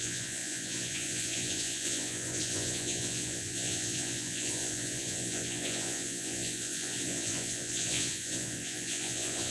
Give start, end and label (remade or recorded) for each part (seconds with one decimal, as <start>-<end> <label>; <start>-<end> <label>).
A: 0.0-9.5 remade